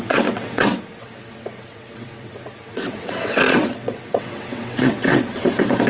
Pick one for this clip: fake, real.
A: fake